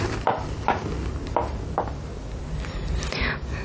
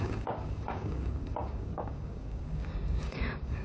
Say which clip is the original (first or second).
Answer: first